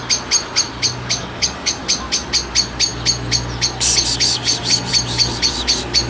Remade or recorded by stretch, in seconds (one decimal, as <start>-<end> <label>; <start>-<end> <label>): 0.0-1.2 recorded; 1.2-1.8 remade; 1.8-6.1 recorded